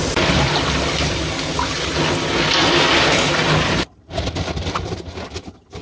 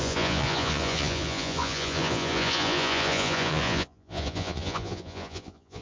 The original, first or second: first